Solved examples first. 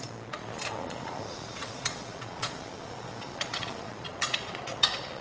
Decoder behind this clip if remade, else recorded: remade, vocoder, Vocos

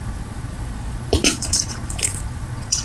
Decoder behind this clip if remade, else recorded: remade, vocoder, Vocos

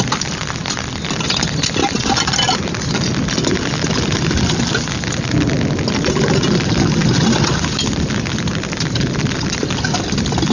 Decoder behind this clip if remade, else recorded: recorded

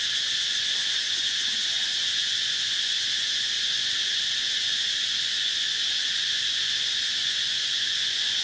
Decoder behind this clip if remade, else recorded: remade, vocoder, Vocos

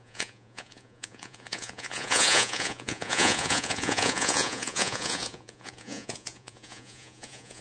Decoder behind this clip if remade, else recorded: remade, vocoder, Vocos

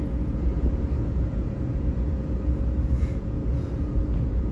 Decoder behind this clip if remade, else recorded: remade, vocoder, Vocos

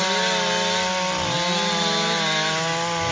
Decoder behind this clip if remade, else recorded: recorded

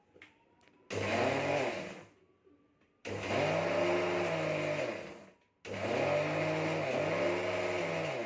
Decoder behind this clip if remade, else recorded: recorded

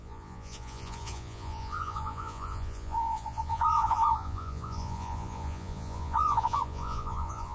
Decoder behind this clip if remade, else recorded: remade, vocoder, Vocos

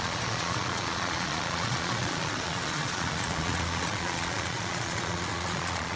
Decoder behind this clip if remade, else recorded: remade, vocoder, Vocos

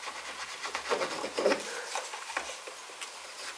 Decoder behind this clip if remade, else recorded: recorded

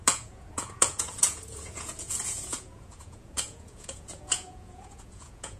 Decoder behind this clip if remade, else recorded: remade, vocoder, Vocos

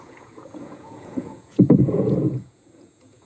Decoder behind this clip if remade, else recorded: remade, vocoder, Vocos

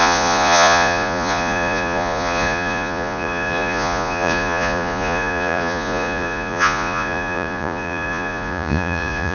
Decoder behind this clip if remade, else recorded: remade, vocoder, Vocos